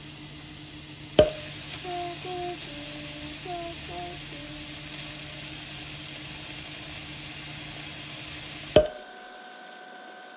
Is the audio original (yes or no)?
yes